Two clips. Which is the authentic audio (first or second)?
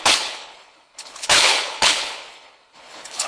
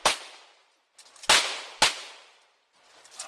second